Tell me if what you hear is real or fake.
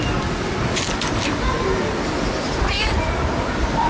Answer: real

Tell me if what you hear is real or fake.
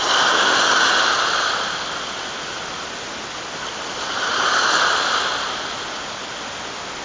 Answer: real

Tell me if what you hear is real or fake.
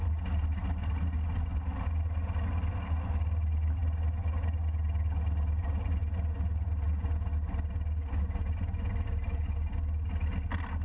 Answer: real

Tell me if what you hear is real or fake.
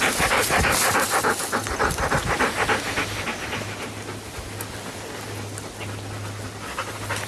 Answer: real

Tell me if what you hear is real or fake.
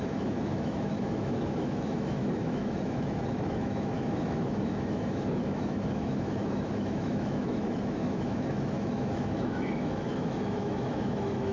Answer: fake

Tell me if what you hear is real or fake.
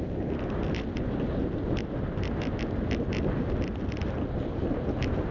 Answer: real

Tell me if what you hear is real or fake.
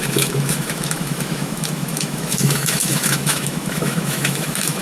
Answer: fake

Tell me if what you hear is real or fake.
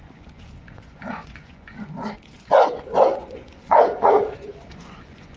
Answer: fake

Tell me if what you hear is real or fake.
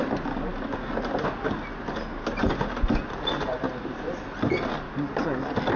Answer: real